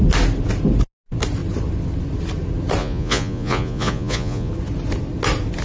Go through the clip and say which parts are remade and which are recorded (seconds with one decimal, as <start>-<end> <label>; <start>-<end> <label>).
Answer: 0.0-2.8 recorded; 2.8-4.5 remade; 4.5-5.6 recorded